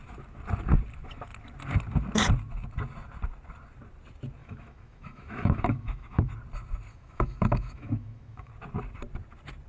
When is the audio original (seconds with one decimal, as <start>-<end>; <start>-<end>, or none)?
0.0-4.4; 6.3-6.9; 8.5-9.7